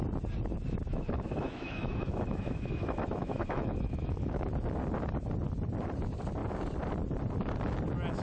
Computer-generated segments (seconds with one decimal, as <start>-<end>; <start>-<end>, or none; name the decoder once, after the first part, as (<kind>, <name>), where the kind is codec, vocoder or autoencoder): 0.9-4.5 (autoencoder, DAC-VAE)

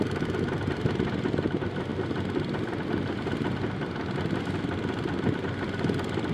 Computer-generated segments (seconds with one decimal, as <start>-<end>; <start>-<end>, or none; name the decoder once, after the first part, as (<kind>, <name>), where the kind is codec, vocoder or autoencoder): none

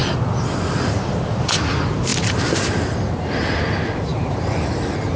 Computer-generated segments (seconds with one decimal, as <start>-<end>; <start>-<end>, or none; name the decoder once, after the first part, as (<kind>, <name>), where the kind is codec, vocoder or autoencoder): 4.1-4.7 (vocoder, BigVGAN v2)